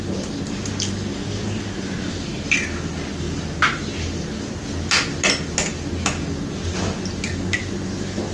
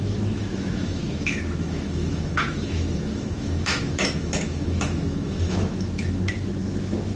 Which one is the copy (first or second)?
second